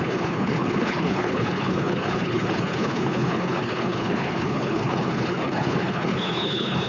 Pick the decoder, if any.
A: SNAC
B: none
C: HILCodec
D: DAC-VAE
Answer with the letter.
C